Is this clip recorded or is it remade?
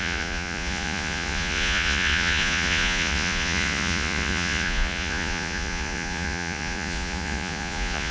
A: remade